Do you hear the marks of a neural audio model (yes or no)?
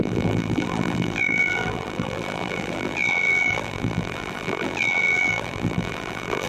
yes